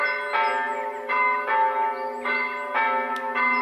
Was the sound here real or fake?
real